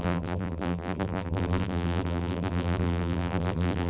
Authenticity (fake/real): fake